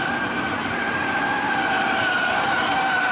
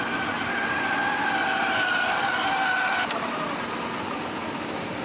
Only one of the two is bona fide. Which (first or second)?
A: second